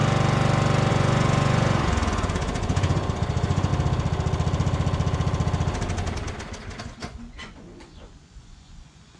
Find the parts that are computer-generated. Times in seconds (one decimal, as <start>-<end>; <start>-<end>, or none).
0.9-3.7; 6.8-9.2